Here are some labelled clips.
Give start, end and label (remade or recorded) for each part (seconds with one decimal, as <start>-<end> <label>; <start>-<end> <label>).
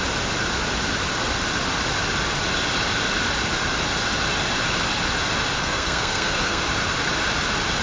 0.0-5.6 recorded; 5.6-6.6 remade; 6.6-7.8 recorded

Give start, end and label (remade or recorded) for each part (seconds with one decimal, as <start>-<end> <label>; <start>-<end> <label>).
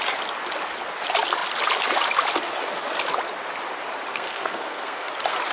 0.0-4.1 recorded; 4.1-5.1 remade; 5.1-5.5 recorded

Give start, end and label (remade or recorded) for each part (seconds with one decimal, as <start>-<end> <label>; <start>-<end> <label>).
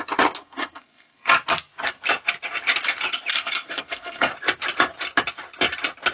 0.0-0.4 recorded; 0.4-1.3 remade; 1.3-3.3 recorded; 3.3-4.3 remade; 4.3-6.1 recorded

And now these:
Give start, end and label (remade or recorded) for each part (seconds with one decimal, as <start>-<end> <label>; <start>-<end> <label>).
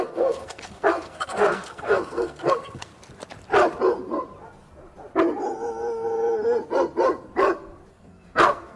0.0-2.9 remade; 2.9-7.9 recorded; 7.9-8.8 remade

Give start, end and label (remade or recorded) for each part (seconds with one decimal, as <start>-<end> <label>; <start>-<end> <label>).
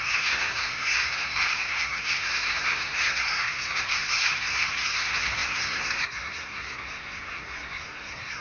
0.0-8.4 remade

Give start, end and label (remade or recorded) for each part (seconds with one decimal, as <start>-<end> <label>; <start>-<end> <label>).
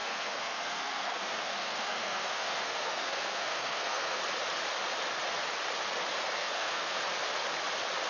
0.0-4.2 remade; 4.2-6.4 recorded; 6.4-7.0 remade; 7.0-8.1 recorded